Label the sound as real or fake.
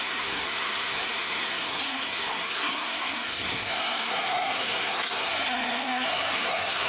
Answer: fake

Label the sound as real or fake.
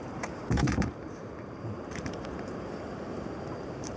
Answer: fake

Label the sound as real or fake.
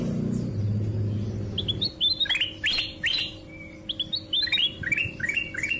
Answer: real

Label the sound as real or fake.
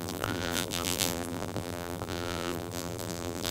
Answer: fake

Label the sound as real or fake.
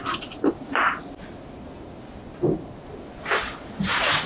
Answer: real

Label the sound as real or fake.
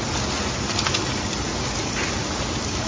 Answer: real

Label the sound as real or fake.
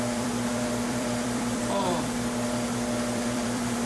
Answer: fake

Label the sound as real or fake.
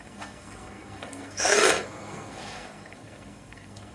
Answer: fake